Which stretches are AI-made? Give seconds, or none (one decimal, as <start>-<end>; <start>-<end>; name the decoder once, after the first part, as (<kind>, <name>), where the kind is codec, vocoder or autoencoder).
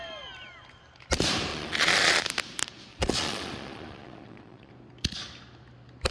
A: 1.5-2.2 (vocoder, Vocos); 2.9-4.7